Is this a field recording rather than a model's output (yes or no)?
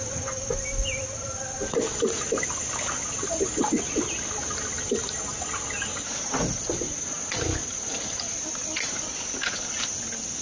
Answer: yes